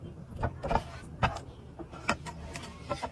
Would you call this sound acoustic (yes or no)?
yes